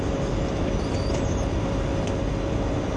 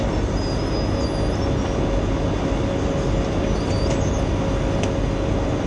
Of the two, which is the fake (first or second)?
first